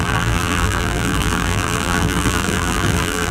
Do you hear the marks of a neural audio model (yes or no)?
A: yes